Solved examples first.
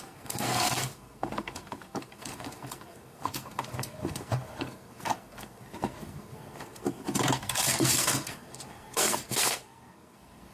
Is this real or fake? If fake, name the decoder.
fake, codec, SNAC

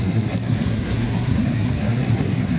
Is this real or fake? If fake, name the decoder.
fake, codec, SNAC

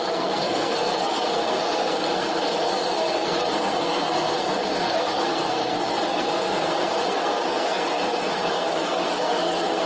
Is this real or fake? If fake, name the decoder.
fake, codec, SNAC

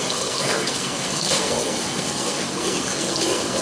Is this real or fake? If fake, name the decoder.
fake, codec, SNAC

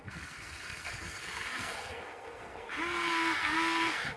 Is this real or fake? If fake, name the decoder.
fake, codec, SNAC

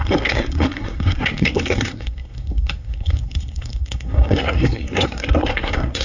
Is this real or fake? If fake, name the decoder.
fake, codec, SNAC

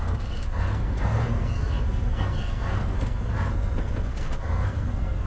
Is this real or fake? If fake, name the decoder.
fake, codec, SNAC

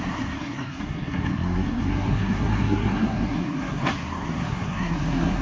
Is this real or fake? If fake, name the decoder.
fake, codec, SNAC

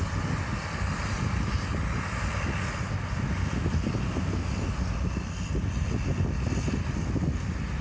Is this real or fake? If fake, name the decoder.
real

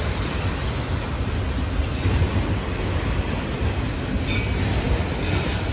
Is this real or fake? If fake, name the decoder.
real